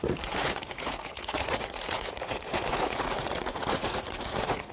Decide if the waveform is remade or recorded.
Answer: remade